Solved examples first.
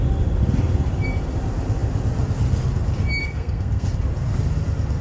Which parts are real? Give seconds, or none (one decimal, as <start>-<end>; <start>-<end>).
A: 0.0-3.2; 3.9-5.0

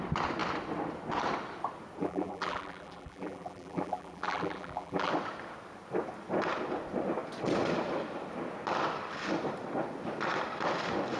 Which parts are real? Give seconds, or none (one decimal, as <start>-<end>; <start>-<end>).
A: 0.0-2.0; 5.1-11.2

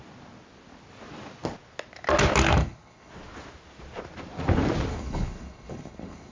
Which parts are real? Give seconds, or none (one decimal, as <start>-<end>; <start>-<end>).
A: 0.0-2.6; 3.1-4.9

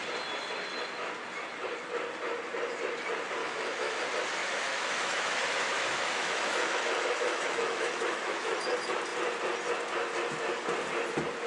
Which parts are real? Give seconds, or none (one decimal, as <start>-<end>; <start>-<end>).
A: 0.0-3.4; 4.0-4.4; 8.6-11.5